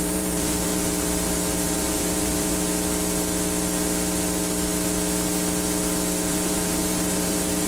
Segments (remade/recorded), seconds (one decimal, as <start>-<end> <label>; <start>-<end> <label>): 0.0-2.5 remade; 2.5-6.3 recorded; 6.3-7.7 remade

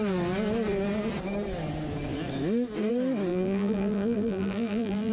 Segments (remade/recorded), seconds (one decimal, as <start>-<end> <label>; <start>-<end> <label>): 0.0-3.3 recorded; 3.3-5.1 remade

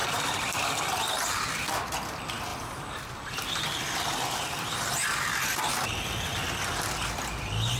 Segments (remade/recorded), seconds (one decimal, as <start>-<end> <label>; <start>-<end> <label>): 0.0-0.9 remade; 0.9-2.5 recorded; 2.5-4.9 remade; 4.9-7.8 recorded

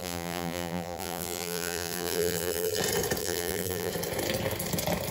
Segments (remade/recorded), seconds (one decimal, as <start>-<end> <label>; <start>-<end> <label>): 0.0-2.8 remade; 2.8-3.2 recorded; 3.2-3.9 remade; 3.9-5.1 recorded